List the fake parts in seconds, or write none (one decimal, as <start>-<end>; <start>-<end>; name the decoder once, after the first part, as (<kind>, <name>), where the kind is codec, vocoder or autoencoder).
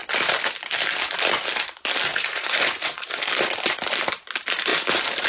2.1-3.2 (vocoder, Vocos)